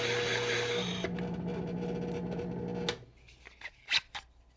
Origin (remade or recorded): recorded